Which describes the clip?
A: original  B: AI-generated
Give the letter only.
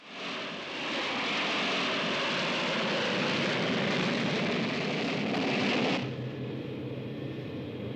A